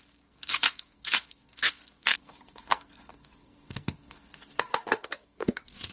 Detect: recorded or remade remade